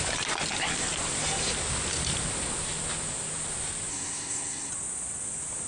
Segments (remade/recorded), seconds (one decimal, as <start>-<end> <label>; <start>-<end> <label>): 0.0-3.9 recorded; 3.9-4.7 remade; 4.7-5.7 recorded